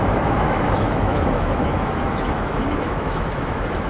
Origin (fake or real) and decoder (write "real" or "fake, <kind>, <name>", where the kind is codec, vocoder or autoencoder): fake, autoencoder, DAC-VAE